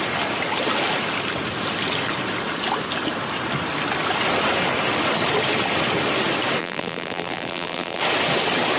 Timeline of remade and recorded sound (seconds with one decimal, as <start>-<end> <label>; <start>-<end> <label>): 0.0-6.6 recorded; 6.6-8.0 remade; 8.0-8.8 recorded